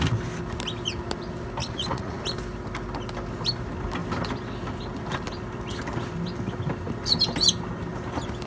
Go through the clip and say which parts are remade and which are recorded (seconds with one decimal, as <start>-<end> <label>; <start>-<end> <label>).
0.0-1.6 recorded; 1.6-2.2 remade; 2.2-8.5 recorded